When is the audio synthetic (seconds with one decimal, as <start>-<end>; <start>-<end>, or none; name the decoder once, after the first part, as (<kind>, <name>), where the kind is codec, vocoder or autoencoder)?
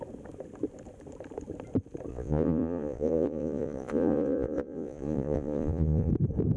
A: 2.1-6.1 (vocoder, Vocos)